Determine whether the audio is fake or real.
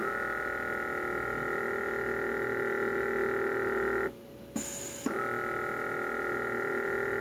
real